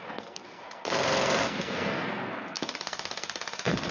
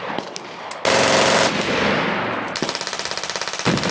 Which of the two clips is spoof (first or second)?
first